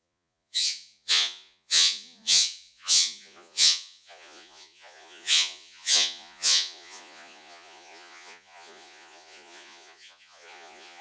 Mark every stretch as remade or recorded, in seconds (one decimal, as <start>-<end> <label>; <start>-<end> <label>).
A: 0.0-11.0 remade